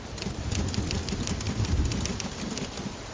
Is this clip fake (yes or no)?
no